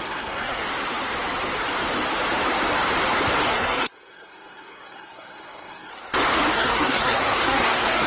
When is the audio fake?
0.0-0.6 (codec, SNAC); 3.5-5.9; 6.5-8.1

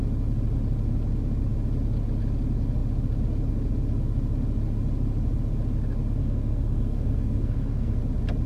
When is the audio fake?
6.2-8.0 (codec, SNAC)

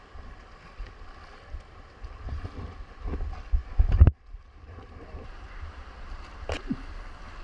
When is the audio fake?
1.3-1.9 (vocoder, BigVGAN v2); 3.6-6.2

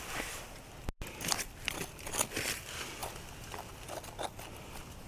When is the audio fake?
none

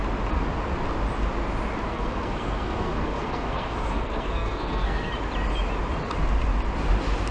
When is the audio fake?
1.9-5.1 (codec, SNAC)

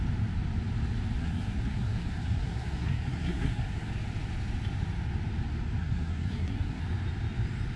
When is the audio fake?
1.2-3.9 (codec, SNAC); 5.8-6.8

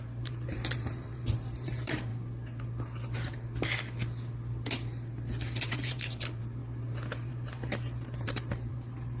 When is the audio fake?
0.0-2.1 (vocoder, BigVGAN v2); 5.7-6.6; 7.3-9.2